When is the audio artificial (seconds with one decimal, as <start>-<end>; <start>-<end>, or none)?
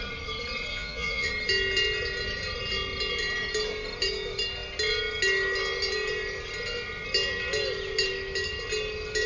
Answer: 0.7-1.3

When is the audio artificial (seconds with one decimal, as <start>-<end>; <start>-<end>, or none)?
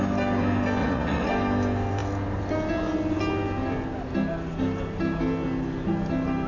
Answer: 0.8-1.3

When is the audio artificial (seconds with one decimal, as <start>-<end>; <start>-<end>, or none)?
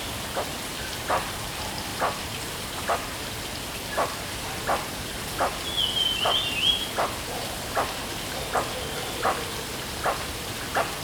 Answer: none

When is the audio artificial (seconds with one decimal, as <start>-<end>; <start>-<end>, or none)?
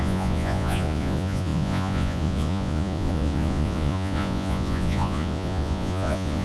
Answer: 0.0-6.4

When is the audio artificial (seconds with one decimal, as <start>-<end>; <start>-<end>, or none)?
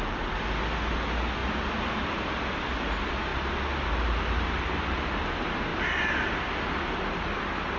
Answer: none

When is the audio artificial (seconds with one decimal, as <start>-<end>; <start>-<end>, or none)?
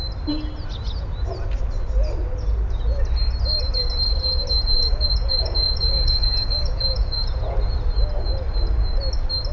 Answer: 4.8-7.4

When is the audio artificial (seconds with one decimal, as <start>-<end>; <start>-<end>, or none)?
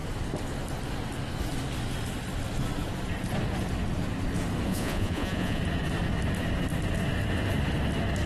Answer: 4.7-5.6